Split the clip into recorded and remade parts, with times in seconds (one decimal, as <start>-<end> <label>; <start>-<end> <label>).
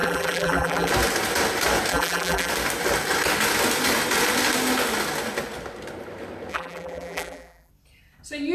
0.0-0.9 remade; 0.9-1.9 recorded; 1.9-2.5 remade; 2.5-6.5 recorded; 6.5-7.7 remade; 7.7-8.5 recorded